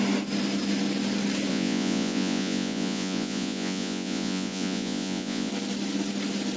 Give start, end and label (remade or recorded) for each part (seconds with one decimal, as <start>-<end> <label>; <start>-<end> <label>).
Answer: 0.0-1.5 recorded; 1.5-5.5 remade; 5.5-6.6 recorded